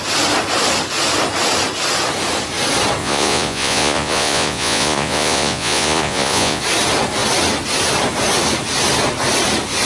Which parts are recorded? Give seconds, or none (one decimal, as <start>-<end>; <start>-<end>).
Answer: 0.0-3.0; 6.6-9.9